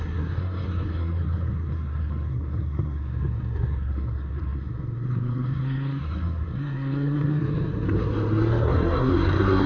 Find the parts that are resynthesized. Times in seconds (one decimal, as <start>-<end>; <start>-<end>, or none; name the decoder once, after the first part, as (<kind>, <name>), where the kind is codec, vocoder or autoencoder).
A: 0.0-9.7 (codec, SNAC)